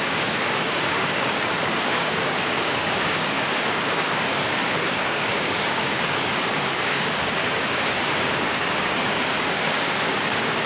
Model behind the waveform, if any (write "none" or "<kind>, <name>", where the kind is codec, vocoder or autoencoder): codec, DAC